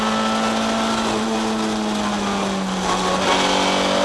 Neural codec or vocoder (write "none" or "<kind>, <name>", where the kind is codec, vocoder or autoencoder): none